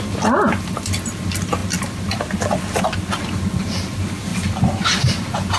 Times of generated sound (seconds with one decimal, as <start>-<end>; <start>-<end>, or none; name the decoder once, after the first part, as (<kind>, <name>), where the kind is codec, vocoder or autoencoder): none